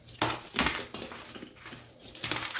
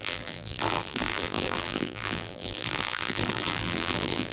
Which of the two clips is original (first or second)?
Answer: first